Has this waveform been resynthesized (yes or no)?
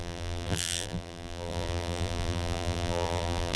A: yes